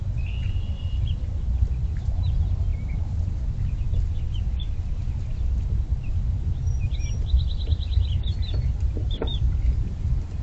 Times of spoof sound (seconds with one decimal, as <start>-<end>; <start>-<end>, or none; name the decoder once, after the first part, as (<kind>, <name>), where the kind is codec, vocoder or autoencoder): none